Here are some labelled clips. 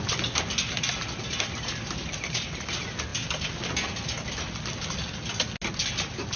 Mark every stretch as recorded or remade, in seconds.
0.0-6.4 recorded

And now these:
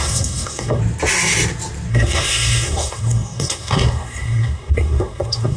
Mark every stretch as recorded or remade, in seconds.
0.0-0.8 remade; 0.8-1.9 recorded; 1.9-5.6 remade

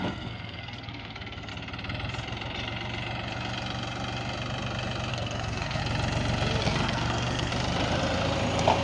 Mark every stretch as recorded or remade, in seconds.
0.0-1.5 remade; 1.5-5.1 recorded; 5.1-5.8 remade; 5.8-6.6 recorded; 6.6-7.5 remade; 7.5-8.8 recorded

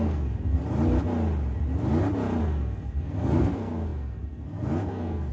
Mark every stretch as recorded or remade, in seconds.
0.0-0.6 remade; 0.6-2.4 recorded; 2.4-5.3 remade

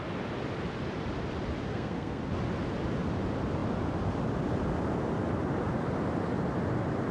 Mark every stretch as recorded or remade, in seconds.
0.0-1.7 recorded; 1.7-2.2 remade; 2.2-7.1 recorded

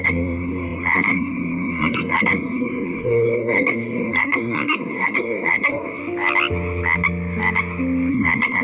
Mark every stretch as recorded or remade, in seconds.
0.0-6.0 remade; 6.0-8.1 recorded; 8.1-8.6 remade

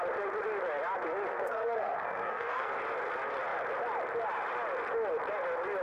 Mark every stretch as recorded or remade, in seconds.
0.0-1.3 recorded; 1.3-2.7 remade; 2.7-5.8 recorded